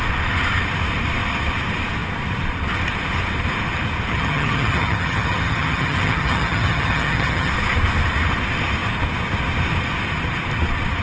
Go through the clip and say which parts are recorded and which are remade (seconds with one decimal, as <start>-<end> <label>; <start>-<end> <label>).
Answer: 0.0-4.1 recorded; 4.1-7.5 remade; 7.5-11.0 recorded